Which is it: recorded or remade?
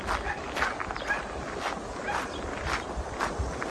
recorded